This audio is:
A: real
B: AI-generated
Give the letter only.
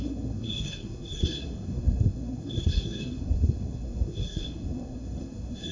B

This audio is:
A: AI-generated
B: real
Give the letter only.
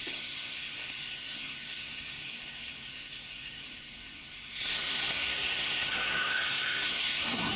A